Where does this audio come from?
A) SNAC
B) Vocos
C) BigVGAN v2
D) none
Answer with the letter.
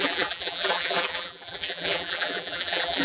C